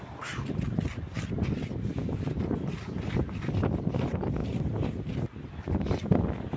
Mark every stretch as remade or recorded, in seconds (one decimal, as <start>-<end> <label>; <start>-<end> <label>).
0.0-6.6 recorded